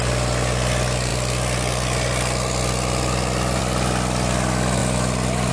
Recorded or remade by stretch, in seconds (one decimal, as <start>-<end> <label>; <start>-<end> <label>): 0.0-5.5 recorded